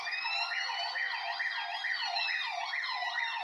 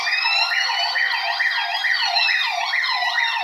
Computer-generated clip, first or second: second